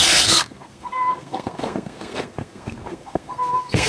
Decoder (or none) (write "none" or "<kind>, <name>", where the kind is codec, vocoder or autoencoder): codec, SNAC